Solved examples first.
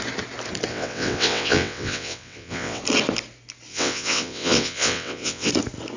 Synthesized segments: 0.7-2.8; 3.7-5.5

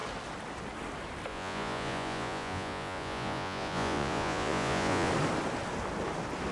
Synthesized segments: 1.3-5.1

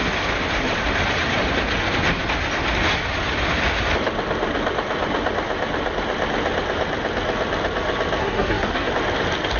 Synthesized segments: 8.2-8.9